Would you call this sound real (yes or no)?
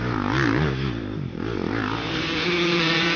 no